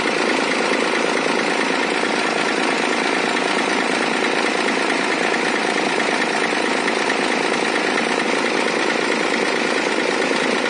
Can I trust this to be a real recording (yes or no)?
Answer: yes